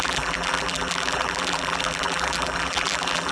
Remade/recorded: remade